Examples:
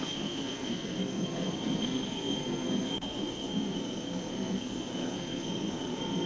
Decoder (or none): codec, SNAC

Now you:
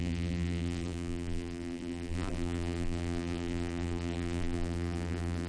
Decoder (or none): vocoder, BigVGAN v2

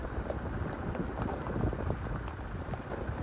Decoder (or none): none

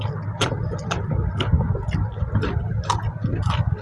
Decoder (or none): none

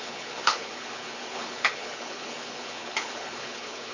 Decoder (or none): codec, HILCodec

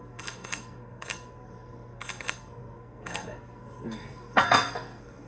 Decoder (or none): codec, SNAC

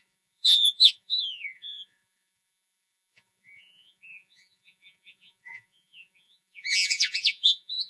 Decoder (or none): vocoder, Vocos